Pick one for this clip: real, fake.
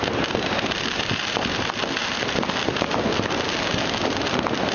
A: real